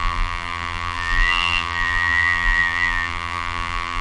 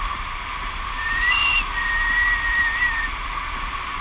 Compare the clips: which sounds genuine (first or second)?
second